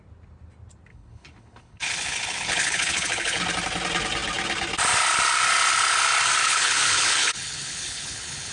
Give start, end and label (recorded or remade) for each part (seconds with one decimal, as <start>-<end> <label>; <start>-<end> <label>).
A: 0.0-0.9 recorded; 0.9-3.4 remade; 3.4-6.4 recorded; 6.4-8.5 remade